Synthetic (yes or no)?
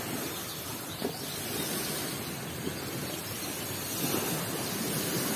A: no